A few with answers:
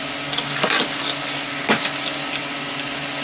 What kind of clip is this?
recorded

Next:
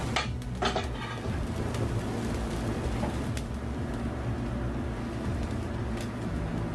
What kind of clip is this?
recorded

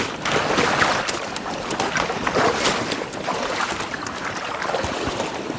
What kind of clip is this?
recorded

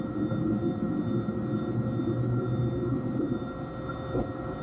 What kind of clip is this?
recorded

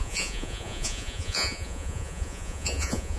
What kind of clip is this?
remade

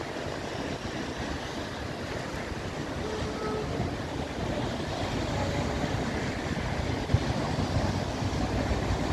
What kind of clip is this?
recorded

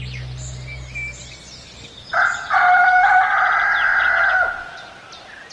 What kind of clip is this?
recorded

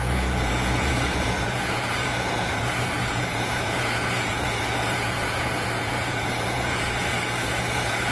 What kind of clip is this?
remade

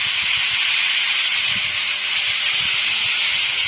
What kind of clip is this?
recorded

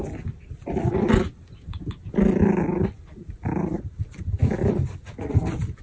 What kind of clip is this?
recorded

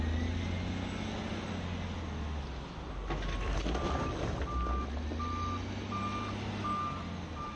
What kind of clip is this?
recorded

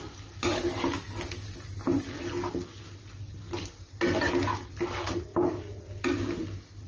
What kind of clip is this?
recorded